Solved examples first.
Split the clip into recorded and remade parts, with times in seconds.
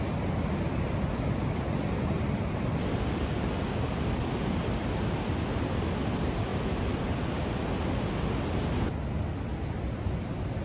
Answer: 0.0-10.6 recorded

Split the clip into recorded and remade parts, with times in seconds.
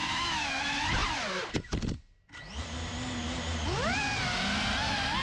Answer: 0.0-0.6 remade; 0.6-5.2 recorded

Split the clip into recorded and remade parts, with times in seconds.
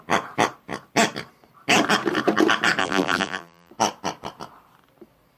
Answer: 0.0-2.8 recorded; 2.8-3.7 remade; 3.7-5.4 recorded